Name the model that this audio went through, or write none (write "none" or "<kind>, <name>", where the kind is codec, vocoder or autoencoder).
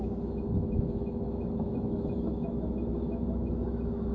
autoencoder, DAC-VAE